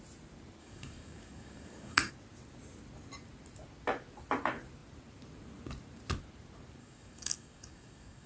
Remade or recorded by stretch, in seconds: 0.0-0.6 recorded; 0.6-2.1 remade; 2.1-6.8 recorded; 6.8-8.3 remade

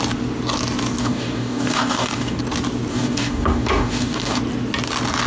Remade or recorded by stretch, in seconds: 0.0-1.0 recorded; 1.0-2.4 remade; 2.4-2.9 recorded; 2.9-4.4 remade; 4.4-5.3 recorded